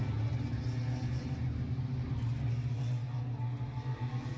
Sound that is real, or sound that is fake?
real